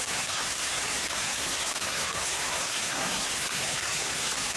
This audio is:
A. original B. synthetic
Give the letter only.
B